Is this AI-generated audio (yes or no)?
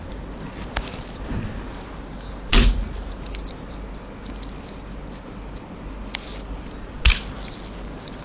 no